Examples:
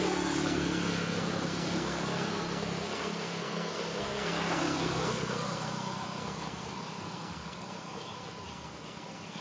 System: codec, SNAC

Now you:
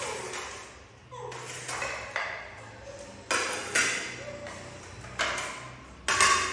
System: none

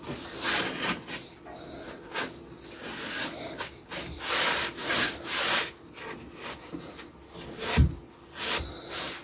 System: none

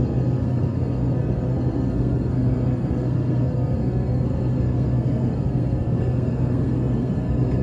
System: codec, SNAC